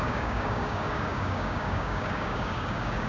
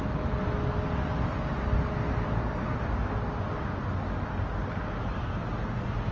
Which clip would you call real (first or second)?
second